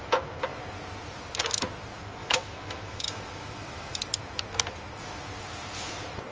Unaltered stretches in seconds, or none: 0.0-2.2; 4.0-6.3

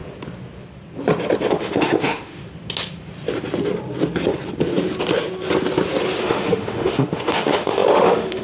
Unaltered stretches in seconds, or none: 0.0-1.5; 2.4-6.2

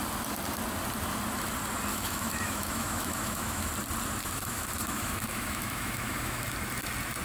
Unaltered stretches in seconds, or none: 0.0-1.9; 3.7-4.2; 6.4-7.2

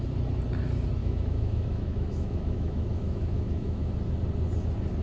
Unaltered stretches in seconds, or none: 0.0-1.0; 3.9-5.0

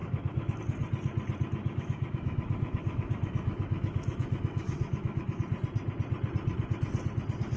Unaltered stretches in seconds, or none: 0.6-1.6; 5.4-7.6